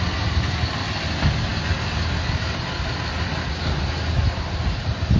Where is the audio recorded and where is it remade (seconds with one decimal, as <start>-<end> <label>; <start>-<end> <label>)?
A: 0.0-5.2 recorded